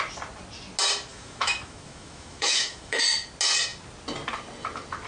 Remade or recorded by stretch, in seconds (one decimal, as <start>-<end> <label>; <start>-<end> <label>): 0.0-1.1 recorded; 1.1-3.0 remade; 3.0-5.1 recorded